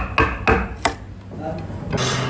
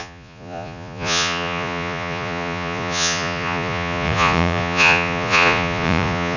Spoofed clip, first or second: second